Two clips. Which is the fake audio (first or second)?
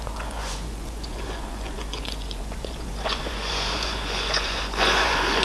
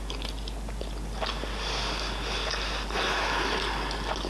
first